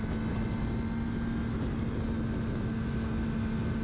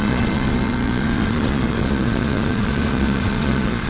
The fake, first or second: second